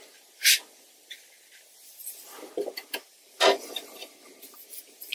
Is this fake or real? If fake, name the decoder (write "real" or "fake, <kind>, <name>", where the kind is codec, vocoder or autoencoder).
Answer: real